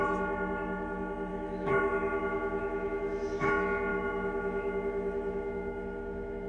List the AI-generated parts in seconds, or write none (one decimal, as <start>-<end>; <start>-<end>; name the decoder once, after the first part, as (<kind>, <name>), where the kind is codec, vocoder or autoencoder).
1.3-3.5 (autoencoder, DAC-VAE); 3.9-6.5